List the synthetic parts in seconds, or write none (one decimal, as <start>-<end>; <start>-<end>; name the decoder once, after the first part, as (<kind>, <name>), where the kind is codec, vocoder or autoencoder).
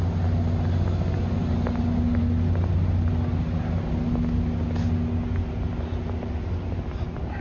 none